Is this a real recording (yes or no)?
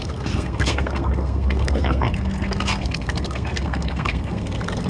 no